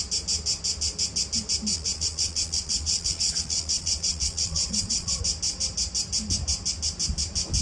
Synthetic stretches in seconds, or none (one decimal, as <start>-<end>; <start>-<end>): 1.7-5.2

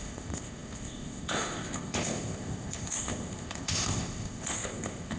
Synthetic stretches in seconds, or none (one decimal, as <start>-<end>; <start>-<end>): 0.0-5.2

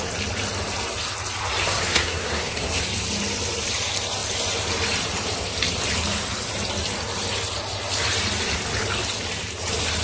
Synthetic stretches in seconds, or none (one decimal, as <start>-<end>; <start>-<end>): 1.6-2.8

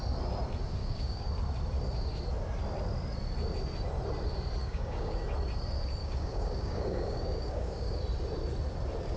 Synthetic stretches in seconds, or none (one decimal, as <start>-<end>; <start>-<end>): 0.8-1.3; 4.6-5.2; 6.0-8.0

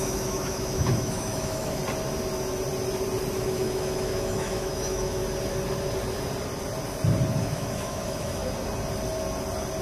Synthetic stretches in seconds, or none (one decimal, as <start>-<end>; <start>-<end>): 0.0-1.8; 3.4-5.2; 7.4-8.4

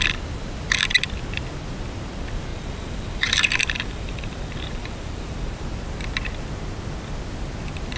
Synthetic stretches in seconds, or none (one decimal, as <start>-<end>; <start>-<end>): 2.5-5.6

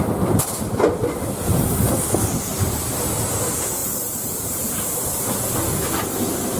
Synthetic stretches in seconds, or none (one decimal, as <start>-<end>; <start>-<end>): 2.5-3.3; 3.8-5.2

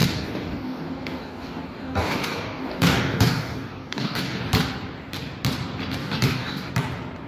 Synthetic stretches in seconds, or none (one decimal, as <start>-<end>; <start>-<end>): 0.0-4.4; 6.0-6.7